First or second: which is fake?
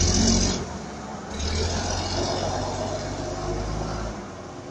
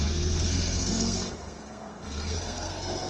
second